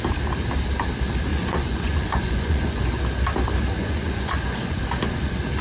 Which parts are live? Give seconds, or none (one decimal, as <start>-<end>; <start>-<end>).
0.0-1.3; 3.0-3.8; 4.8-5.6